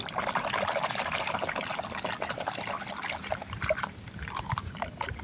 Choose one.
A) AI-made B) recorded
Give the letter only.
B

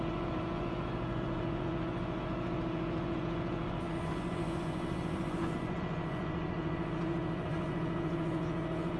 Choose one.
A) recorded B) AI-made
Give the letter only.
B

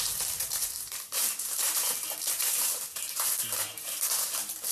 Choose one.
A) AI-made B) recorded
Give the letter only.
A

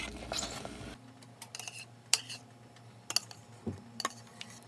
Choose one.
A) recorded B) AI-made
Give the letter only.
A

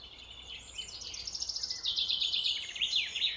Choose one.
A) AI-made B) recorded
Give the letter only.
B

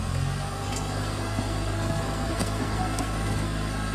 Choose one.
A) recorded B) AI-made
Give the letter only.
B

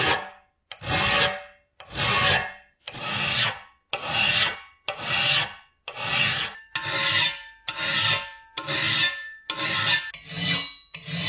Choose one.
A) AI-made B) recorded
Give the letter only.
B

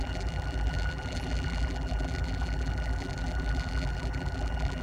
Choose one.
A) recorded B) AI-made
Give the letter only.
B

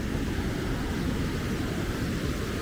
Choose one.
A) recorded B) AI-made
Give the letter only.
A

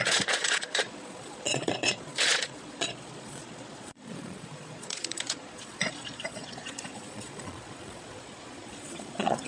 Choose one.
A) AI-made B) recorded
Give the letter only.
A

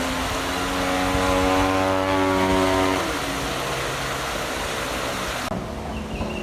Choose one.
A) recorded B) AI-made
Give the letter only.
A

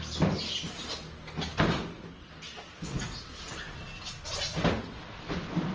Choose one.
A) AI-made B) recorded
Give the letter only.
B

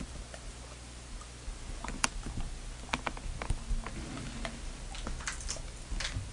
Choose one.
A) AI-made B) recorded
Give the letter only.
B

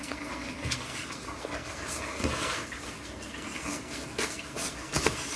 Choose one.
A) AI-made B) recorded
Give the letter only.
A